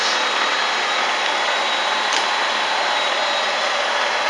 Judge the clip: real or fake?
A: fake